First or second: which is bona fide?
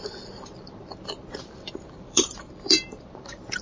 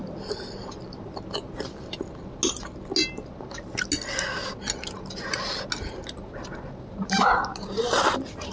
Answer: second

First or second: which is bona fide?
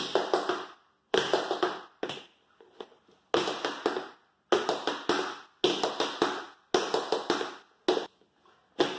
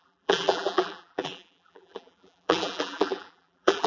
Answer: first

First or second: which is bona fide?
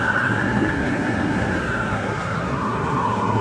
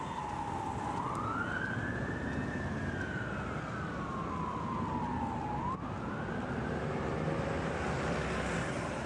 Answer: second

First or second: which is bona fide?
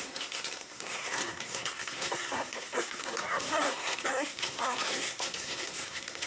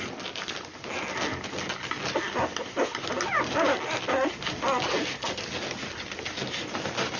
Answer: second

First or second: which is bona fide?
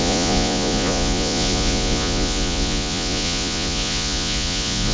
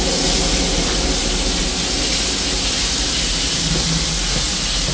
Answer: second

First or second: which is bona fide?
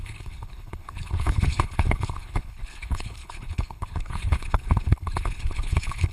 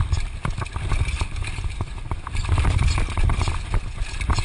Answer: second